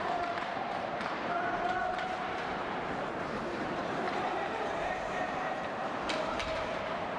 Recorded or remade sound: remade